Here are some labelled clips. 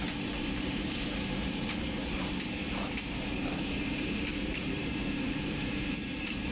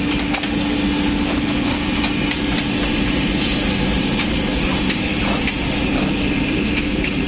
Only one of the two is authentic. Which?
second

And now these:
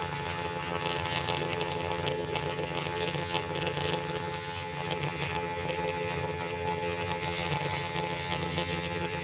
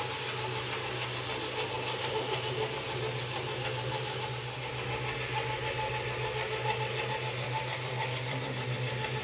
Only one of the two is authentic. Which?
second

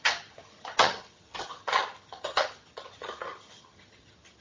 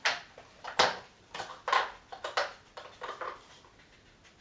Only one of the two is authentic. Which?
second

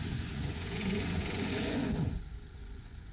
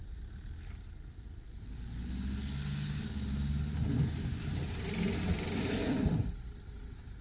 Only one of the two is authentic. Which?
second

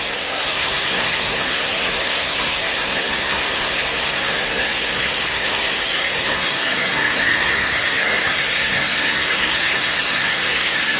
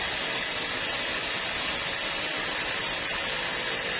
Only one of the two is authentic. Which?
second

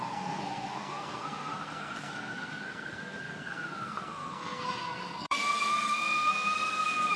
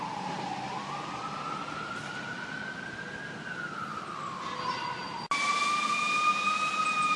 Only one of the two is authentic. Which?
second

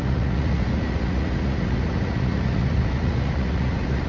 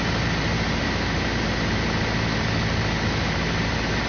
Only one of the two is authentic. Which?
second